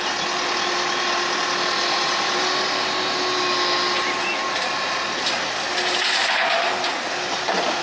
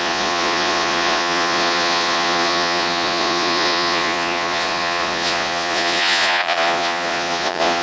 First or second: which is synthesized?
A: second